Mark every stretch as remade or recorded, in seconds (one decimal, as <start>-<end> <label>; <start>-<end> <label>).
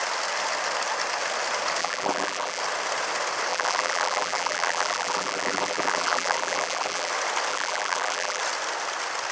0.0-1.8 recorded; 1.8-2.6 remade; 2.6-3.5 recorded; 3.5-7.1 remade; 7.1-7.5 recorded; 7.5-8.4 remade; 8.4-9.3 recorded